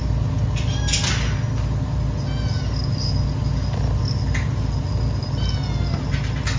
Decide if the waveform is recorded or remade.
recorded